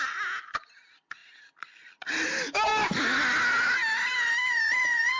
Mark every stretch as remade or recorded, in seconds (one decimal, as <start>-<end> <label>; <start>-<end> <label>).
0.0-5.2 recorded